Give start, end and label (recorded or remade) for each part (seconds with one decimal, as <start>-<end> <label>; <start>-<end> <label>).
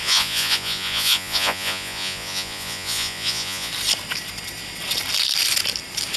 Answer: 0.0-3.7 remade; 3.7-6.2 recorded